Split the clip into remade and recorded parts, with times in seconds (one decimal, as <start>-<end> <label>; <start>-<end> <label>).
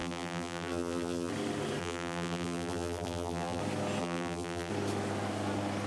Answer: 0.0-1.3 remade; 1.3-1.8 recorded; 1.8-3.6 remade; 3.6-4.0 recorded; 4.0-4.7 remade; 4.7-5.9 recorded